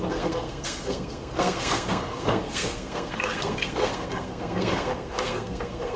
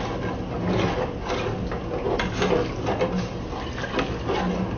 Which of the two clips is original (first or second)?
second